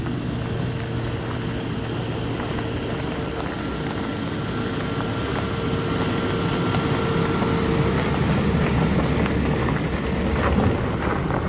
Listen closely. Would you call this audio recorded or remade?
recorded